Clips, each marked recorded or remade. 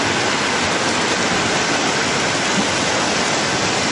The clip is recorded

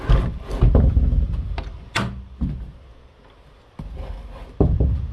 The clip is recorded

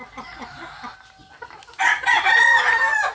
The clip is recorded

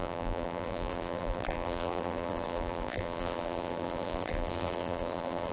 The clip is remade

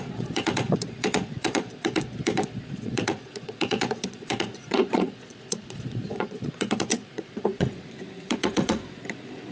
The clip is remade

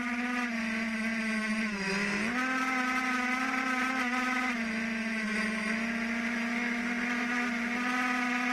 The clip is recorded